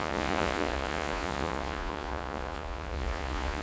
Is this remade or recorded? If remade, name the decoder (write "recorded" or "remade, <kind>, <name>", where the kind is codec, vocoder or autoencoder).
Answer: remade, vocoder, Vocos